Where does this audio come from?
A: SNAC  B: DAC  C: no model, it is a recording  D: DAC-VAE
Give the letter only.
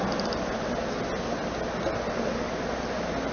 C